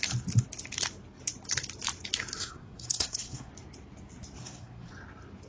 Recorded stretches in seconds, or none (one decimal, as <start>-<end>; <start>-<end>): 0.0-2.4; 3.5-4.4; 4.9-5.5